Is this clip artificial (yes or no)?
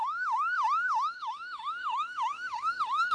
yes